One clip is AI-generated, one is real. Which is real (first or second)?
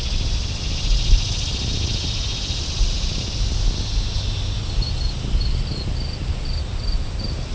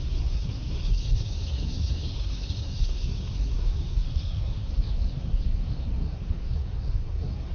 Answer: first